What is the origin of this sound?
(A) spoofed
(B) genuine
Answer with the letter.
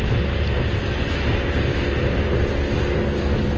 B